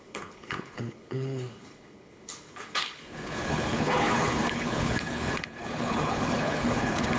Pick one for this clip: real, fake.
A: fake